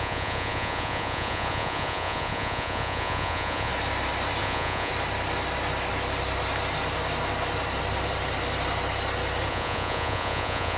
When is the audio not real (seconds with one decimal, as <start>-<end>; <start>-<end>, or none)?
0.0-3.7; 4.4-4.9; 9.5-10.8